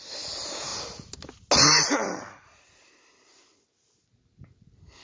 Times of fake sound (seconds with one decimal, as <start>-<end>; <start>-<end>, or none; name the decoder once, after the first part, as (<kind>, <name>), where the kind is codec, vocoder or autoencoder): none